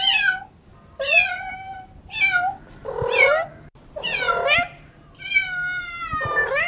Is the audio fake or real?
real